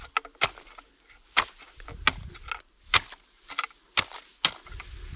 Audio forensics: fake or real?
real